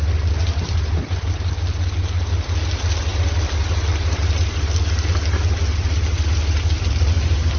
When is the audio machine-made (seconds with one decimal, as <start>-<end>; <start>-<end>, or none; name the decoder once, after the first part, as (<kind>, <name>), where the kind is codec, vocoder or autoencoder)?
none